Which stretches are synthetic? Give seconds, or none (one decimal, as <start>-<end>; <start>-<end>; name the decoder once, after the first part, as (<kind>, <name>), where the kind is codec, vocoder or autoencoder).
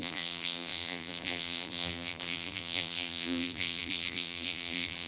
0.0-5.1 (vocoder, BigVGAN v2)